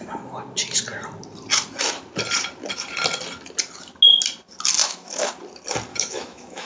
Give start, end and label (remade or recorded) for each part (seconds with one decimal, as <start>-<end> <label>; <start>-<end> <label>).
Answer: 0.0-4.8 recorded; 4.8-5.3 remade; 5.3-5.9 recorded; 5.9-6.7 remade